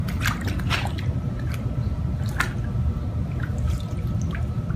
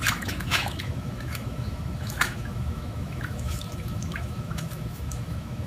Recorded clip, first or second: first